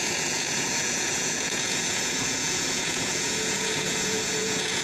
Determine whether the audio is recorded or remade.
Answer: remade